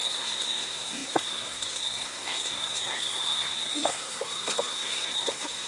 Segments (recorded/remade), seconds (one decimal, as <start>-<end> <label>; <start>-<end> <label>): 0.0-5.7 remade

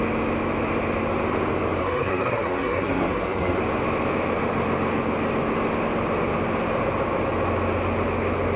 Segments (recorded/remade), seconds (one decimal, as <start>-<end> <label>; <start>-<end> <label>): 0.0-1.8 recorded; 1.8-3.6 remade; 3.6-8.6 recorded